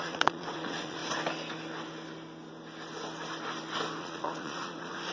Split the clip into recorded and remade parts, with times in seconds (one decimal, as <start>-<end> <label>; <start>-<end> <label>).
0.0-1.0 remade; 1.0-4.0 recorded; 4.0-5.1 remade